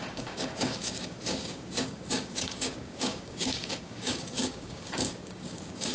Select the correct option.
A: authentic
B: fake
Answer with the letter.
B